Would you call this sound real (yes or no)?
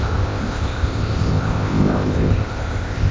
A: no